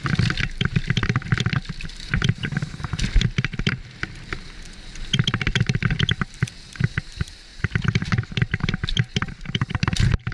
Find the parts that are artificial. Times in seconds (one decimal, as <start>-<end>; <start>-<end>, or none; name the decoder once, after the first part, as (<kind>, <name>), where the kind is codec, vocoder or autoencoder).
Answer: 7.5-8.1 (vocoder, BigVGAN v2)